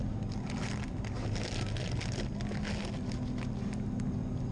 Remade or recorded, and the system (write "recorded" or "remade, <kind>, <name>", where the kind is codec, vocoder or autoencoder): recorded